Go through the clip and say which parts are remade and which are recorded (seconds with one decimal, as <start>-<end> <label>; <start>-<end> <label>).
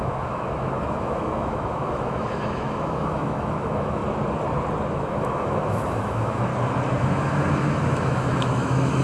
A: 0.0-4.0 remade; 4.0-4.9 recorded; 4.9-6.5 remade; 6.5-7.0 recorded; 7.0-9.0 remade